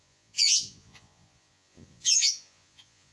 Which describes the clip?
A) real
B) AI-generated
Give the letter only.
B